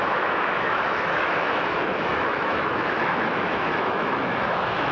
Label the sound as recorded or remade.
remade